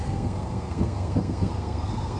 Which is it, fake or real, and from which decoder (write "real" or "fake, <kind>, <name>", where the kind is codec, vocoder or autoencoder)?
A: fake, codec, SNAC